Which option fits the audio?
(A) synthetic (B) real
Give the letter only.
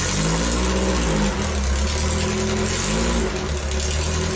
B